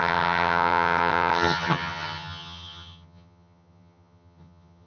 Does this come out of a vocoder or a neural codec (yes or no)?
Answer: yes